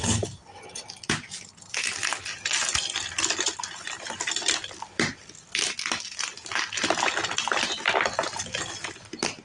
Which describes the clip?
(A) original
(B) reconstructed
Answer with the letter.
A